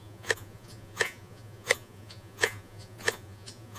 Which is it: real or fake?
fake